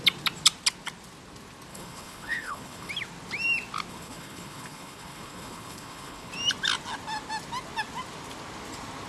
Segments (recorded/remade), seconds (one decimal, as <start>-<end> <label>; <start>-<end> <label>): 0.0-1.7 recorded; 1.7-2.9 remade; 2.9-3.9 recorded; 3.9-6.3 remade; 6.3-9.1 recorded